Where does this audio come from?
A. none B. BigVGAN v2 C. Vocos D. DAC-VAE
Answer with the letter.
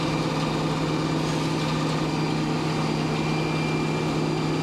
A